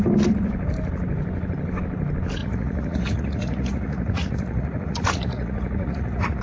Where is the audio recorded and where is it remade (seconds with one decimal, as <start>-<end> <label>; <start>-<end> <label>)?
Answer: 0.0-2.4 recorded; 2.4-6.4 remade